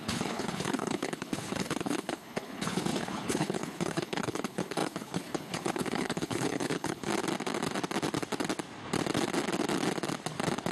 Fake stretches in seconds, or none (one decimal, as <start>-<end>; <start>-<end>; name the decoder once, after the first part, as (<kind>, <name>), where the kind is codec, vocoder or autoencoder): 0.0-7.1 (codec, HILCodec)